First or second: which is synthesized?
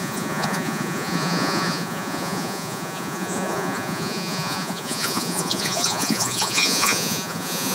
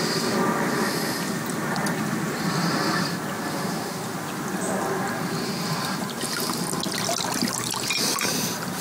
first